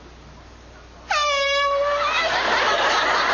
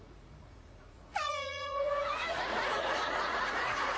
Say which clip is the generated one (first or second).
second